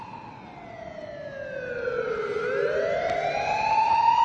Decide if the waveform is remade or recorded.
recorded